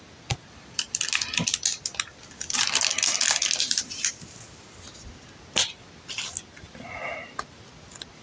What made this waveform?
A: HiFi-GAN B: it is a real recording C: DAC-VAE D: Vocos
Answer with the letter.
B